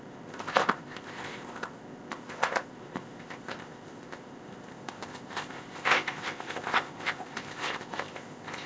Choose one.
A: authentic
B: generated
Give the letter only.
B